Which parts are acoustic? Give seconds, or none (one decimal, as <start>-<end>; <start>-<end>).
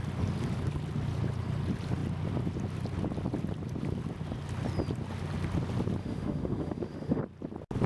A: 0.0-6.0; 7.2-7.9